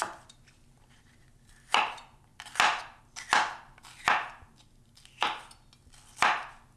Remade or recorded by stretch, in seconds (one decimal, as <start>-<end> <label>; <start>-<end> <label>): 0.0-6.8 recorded